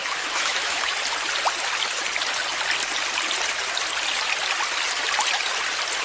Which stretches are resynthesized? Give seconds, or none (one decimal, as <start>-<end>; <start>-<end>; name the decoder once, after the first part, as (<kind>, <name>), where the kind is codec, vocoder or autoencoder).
0.0-0.9 (autoencoder, DAC-VAE)